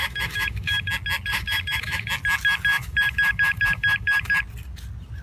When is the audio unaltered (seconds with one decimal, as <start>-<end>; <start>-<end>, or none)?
0.9-1.3; 2.1-2.7; 4.4-5.2